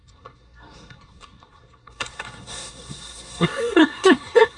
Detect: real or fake fake